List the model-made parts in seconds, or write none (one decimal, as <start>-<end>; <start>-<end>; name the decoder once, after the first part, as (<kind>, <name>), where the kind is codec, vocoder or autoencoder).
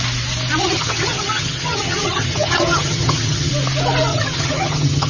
0.6-3.5 (vocoder, HiFi-GAN); 4.1-5.1